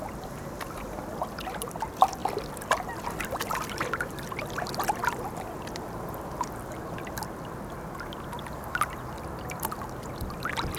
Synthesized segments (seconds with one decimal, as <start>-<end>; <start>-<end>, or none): none